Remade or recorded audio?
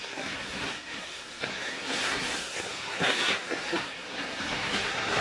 remade